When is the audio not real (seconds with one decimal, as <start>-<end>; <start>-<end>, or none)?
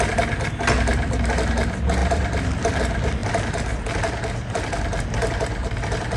2.0-2.8